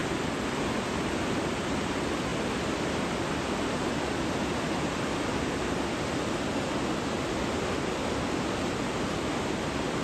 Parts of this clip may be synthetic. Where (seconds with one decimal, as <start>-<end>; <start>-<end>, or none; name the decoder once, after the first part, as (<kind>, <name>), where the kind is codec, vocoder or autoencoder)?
none